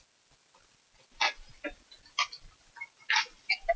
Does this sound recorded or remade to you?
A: recorded